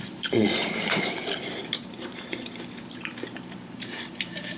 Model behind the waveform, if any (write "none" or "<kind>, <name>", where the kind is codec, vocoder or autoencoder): vocoder, BigVGAN v2